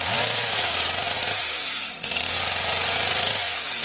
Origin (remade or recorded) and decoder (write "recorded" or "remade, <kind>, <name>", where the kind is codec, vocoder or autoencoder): remade, vocoder, Vocos